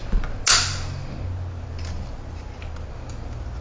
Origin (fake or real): real